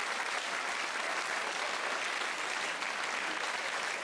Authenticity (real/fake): real